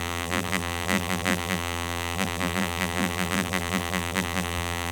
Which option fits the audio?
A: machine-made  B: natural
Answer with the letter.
A